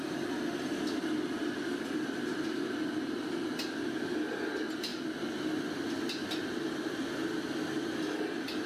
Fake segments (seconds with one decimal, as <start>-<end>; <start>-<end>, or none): none